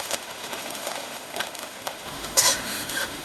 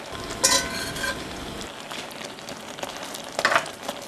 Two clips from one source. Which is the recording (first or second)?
second